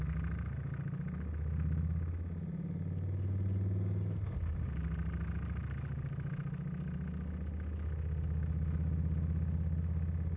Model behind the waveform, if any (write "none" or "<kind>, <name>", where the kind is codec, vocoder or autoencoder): none